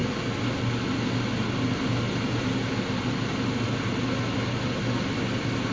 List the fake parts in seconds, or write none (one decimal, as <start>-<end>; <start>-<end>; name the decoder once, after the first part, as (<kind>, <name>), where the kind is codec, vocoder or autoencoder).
none